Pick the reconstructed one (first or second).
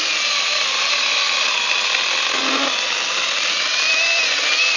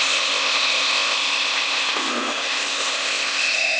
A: second